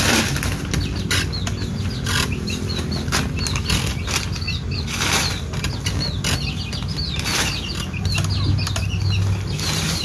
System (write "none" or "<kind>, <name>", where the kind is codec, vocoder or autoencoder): none